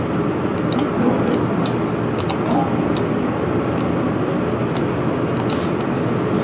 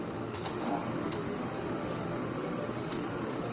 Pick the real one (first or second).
first